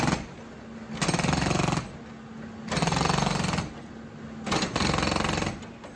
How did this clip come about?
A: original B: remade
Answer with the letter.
A